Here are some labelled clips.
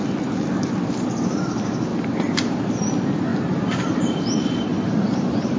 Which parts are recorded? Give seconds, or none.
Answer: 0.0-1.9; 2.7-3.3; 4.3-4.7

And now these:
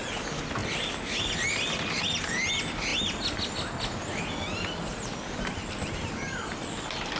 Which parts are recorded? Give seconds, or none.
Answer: 0.0-7.2

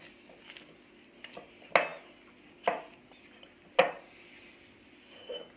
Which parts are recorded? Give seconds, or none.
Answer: 0.0-5.6

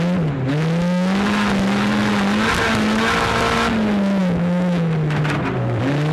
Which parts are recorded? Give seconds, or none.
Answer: 0.0-4.2; 5.2-6.1